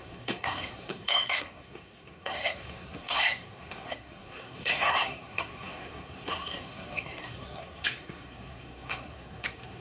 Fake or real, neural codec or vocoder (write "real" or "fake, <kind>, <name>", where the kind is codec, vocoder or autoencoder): fake, codec, SNAC